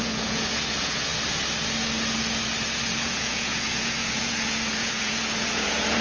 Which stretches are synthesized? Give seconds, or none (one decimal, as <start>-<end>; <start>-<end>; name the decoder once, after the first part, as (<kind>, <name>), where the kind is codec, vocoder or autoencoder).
0.0-1.1 (vocoder, Vocos); 3.0-6.0